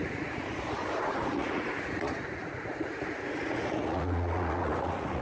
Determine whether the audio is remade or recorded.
remade